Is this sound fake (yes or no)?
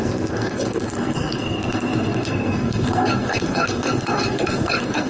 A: yes